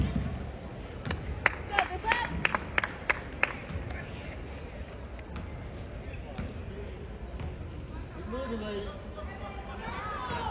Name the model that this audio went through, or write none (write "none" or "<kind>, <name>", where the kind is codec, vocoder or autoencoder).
none